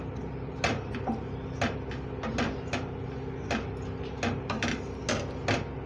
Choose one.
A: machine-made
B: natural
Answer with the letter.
B